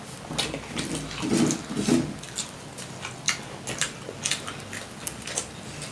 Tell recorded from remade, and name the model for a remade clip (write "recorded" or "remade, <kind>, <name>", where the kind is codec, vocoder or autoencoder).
recorded